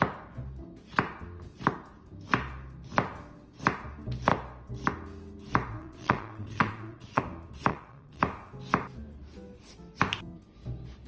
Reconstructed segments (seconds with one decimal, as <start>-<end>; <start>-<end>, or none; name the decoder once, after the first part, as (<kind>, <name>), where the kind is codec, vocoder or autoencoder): 5.8-7.2 (vocoder, Vocos); 7.7-8.2